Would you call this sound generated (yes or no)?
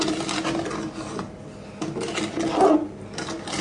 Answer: no